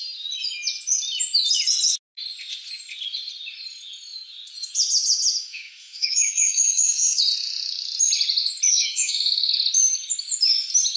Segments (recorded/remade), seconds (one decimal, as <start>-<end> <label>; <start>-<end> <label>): 0.0-5.4 recorded; 5.4-7.2 remade; 7.2-8.7 recorded; 8.7-9.5 remade; 9.5-11.0 recorded